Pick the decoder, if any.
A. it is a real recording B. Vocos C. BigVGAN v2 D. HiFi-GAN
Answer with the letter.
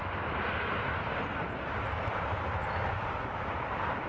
A